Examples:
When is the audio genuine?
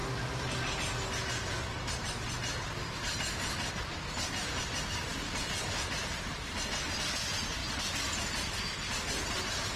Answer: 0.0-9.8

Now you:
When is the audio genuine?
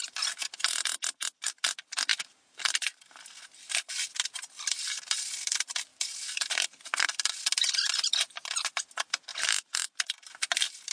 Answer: 0.0-2.1; 3.1-5.9; 7.0-9.3; 9.9-10.9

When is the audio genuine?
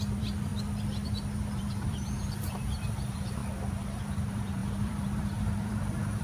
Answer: 0.5-1.4; 3.4-4.1